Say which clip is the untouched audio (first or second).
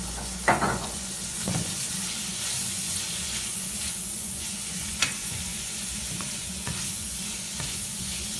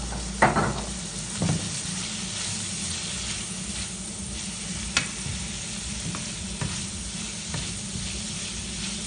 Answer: second